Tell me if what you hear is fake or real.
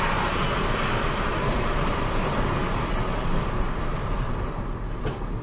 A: real